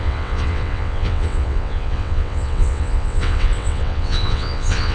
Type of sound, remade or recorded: remade